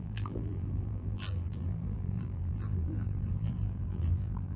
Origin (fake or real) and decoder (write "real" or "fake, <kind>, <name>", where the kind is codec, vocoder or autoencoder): fake, vocoder, BigVGAN v2